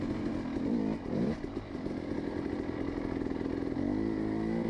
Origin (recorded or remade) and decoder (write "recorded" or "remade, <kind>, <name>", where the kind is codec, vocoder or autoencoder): recorded